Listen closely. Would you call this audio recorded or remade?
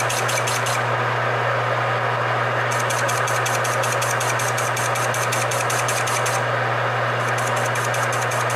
recorded